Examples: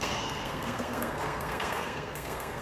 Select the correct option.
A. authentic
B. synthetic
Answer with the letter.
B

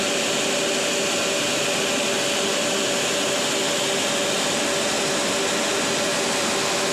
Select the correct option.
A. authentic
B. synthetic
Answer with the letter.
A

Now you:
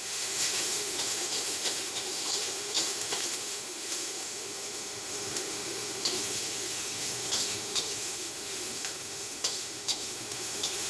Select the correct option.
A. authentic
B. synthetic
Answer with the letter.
B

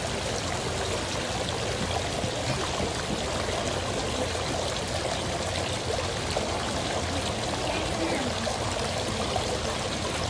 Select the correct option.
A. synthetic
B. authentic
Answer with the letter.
B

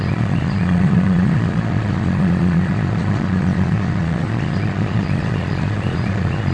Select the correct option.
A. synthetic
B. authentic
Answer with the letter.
A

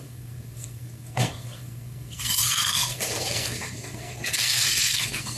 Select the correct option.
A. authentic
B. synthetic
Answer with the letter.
B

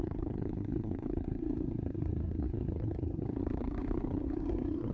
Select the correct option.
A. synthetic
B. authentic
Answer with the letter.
A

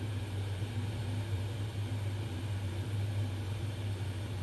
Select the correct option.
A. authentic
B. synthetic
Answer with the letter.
B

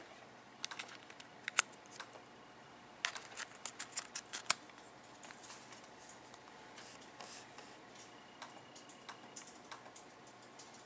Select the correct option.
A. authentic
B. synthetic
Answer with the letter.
A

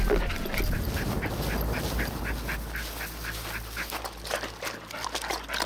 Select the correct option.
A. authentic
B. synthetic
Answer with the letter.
A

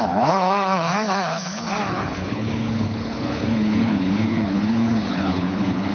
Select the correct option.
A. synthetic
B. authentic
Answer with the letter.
A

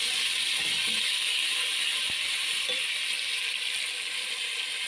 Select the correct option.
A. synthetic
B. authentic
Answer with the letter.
B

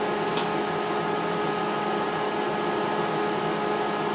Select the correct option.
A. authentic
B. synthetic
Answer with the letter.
A